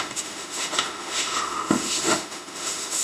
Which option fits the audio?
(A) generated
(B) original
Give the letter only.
A